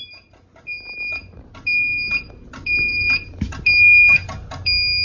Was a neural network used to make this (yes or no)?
no